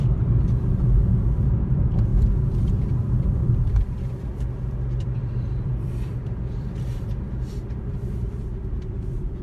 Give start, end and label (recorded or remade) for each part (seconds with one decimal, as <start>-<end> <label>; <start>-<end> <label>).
0.0-1.1 remade; 1.1-1.6 recorded; 1.6-9.4 remade